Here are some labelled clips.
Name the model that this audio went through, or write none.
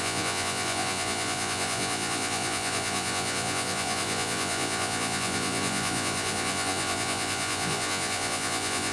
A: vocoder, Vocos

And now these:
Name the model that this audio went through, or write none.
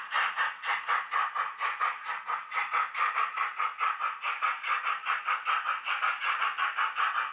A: none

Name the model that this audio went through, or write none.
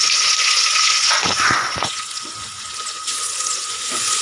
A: vocoder, Vocos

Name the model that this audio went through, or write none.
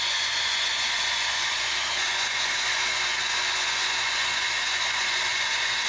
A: vocoder, Vocos